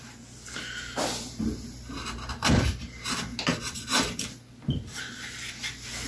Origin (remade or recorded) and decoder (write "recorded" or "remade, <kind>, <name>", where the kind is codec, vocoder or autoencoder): recorded